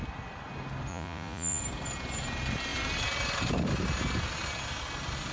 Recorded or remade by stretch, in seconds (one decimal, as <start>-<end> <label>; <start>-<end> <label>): 0.0-0.9 recorded; 0.9-1.6 remade; 1.6-5.3 recorded